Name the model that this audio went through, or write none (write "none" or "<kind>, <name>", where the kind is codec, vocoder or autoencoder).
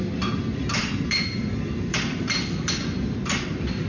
none